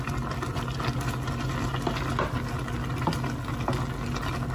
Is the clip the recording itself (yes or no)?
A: yes